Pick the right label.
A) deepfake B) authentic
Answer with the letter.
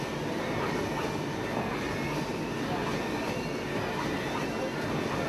B